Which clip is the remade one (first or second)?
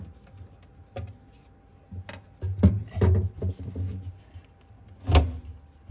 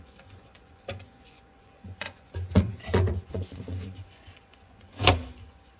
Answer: second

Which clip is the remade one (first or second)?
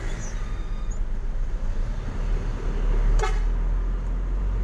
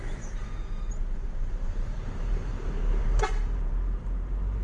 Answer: second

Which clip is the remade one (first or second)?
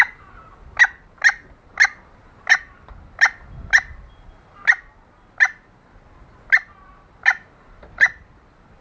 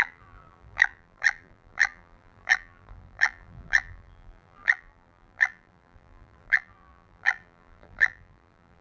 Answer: second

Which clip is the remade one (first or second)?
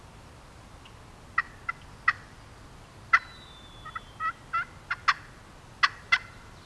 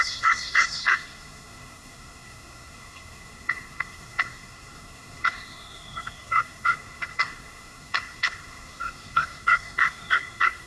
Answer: second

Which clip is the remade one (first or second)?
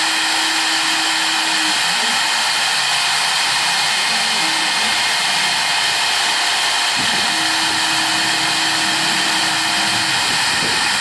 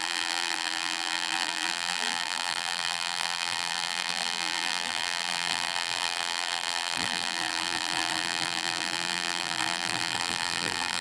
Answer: second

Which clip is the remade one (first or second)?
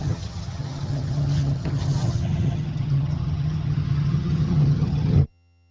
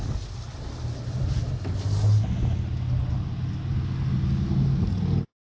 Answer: first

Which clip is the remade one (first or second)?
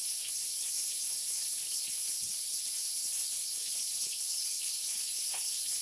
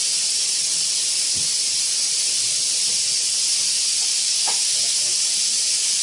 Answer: first